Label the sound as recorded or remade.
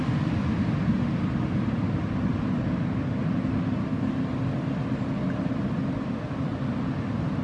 recorded